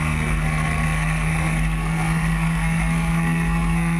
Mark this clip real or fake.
fake